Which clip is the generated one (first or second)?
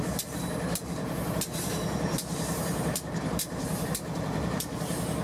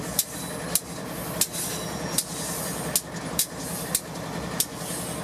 first